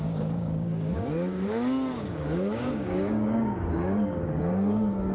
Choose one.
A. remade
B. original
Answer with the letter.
A